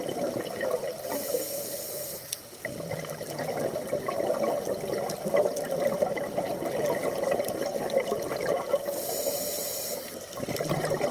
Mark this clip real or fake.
real